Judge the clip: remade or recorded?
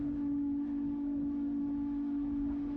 remade